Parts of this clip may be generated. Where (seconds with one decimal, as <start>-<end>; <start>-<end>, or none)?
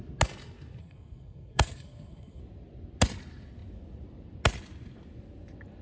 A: 0.8-2.4